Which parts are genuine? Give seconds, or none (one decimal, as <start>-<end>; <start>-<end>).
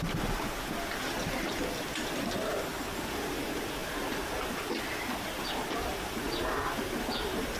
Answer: 0.0-7.6